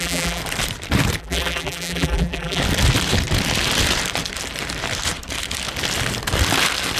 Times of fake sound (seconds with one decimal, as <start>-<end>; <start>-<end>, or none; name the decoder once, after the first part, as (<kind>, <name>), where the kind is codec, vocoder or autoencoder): 0.0-0.4 (vocoder, BigVGAN v2); 1.2-2.6